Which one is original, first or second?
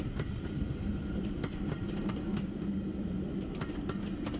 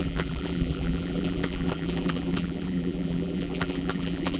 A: first